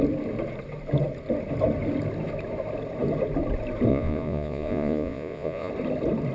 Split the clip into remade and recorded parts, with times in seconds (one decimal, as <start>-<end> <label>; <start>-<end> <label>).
0.0-3.9 recorded; 3.9-5.7 remade; 5.7-6.3 recorded

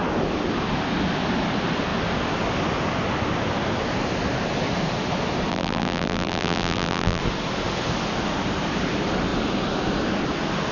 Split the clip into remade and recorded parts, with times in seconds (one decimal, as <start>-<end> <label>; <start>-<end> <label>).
0.0-5.5 recorded; 5.5-7.2 remade; 7.2-10.7 recorded

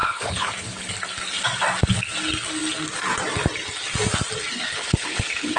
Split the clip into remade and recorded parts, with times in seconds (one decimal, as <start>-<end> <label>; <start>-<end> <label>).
0.0-0.9 remade; 0.9-4.7 recorded; 4.7-5.6 remade

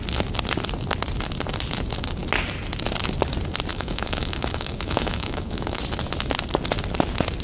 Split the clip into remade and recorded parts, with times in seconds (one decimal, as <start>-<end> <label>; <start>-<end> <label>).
0.0-3.7 recorded; 3.7-5.8 remade; 5.8-7.4 recorded

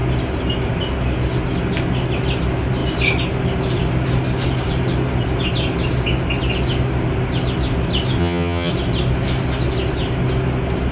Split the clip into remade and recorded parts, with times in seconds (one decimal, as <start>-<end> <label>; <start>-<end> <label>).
0.0-8.2 recorded; 8.2-8.7 remade; 8.7-10.9 recorded

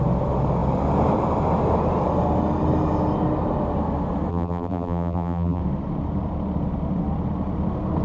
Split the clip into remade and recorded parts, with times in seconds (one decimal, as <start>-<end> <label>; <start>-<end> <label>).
0.0-4.3 recorded; 4.3-5.6 remade; 5.6-8.0 recorded

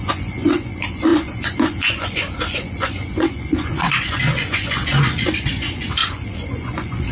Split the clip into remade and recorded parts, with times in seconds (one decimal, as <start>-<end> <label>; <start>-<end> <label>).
0.0-7.1 remade